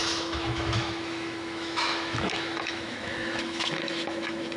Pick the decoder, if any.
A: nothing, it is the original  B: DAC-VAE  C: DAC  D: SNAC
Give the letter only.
B